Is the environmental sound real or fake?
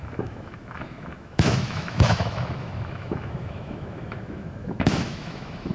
fake